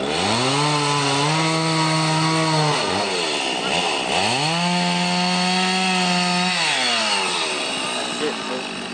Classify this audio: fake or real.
real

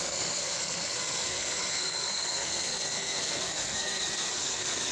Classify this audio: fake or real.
fake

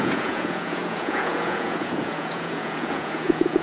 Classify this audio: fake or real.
fake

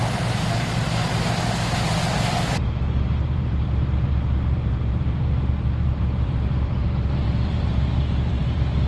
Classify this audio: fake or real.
fake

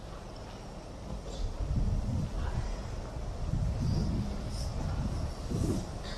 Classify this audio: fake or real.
real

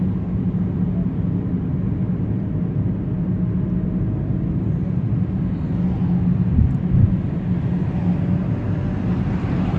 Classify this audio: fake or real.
real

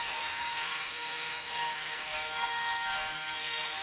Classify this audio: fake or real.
fake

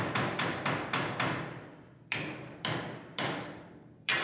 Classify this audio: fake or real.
fake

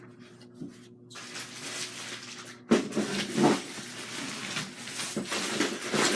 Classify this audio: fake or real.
real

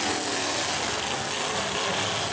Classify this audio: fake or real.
real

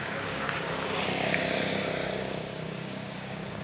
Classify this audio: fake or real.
fake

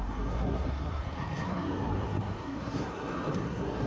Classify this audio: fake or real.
fake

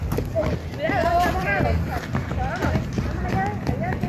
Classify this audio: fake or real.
real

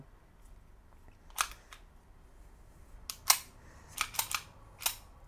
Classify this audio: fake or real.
real